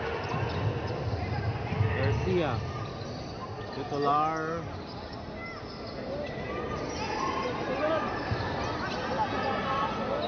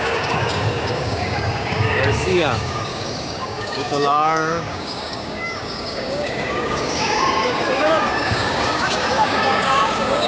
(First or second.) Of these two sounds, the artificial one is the second